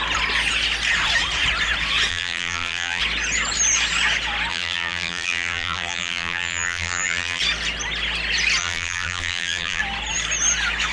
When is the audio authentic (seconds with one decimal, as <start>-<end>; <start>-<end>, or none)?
0.0-2.1; 3.0-4.5; 7.4-8.6; 9.8-10.9